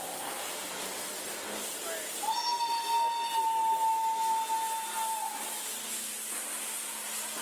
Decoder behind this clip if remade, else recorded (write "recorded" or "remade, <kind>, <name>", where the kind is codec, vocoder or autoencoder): recorded